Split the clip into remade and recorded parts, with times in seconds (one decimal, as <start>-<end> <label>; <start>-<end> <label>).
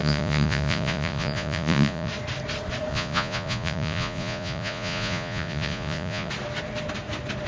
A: 0.0-2.1 remade; 2.1-2.9 recorded; 2.9-6.3 remade; 6.3-7.5 recorded